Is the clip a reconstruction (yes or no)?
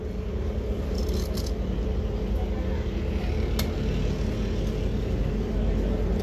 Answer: no